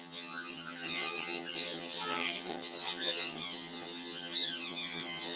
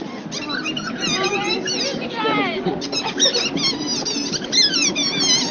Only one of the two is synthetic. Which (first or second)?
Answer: first